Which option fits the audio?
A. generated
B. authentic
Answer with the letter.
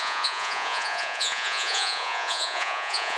A